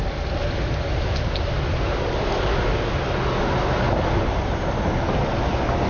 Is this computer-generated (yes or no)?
no